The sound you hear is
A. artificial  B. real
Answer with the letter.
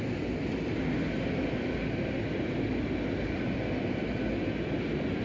B